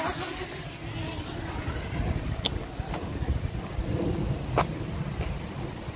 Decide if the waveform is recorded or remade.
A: recorded